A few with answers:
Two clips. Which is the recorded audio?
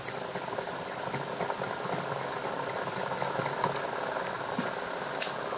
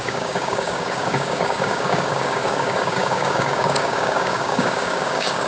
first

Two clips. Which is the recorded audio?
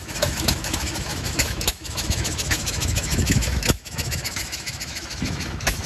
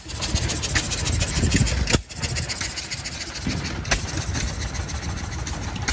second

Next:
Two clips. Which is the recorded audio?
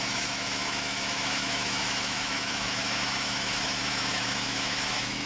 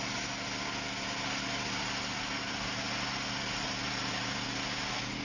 second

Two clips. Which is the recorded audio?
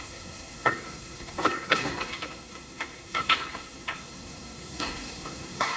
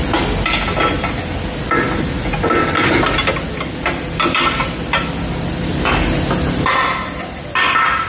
second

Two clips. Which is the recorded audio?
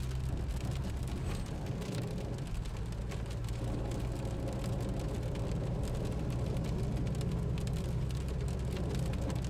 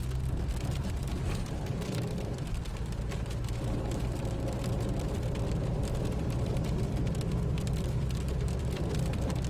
first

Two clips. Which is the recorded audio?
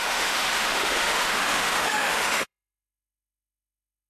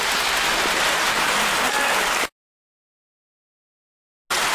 second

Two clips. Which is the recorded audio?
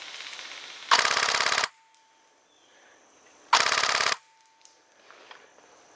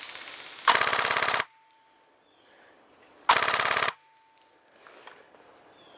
second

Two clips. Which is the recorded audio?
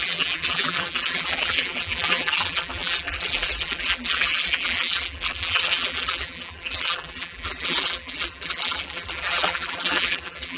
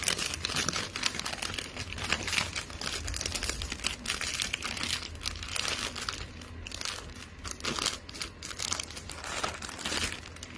second